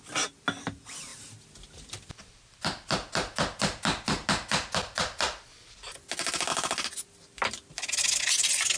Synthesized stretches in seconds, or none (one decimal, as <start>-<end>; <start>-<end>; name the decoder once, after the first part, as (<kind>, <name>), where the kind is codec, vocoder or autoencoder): none